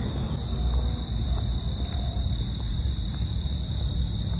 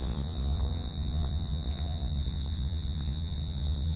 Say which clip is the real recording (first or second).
first